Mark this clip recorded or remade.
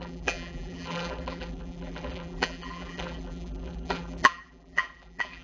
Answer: remade